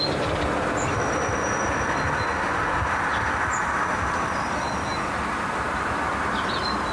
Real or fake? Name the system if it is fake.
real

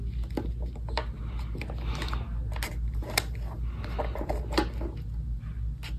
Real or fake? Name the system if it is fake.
real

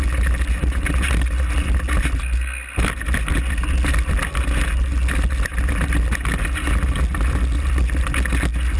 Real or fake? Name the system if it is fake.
real